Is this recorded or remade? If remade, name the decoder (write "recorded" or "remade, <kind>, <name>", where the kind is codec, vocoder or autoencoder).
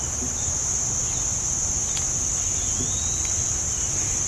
recorded